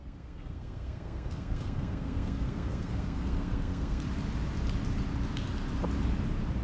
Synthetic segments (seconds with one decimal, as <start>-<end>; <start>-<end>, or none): 0.0-4.0